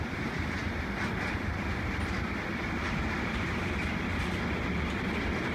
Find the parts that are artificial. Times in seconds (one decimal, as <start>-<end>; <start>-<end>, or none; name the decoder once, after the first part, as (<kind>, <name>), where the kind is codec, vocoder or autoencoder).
0.6-3.9 (vocoder, BigVGAN v2)